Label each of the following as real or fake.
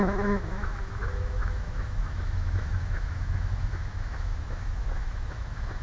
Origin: fake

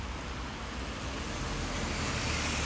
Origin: real